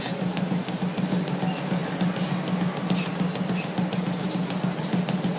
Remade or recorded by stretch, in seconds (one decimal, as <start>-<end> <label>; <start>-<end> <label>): 0.0-5.4 recorded